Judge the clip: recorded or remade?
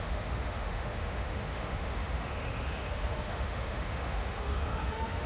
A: remade